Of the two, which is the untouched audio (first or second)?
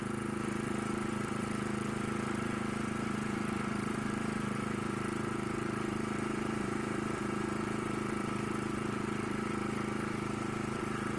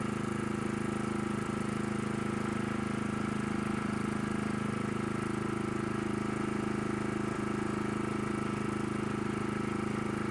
second